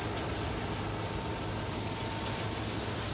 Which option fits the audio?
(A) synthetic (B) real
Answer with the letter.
B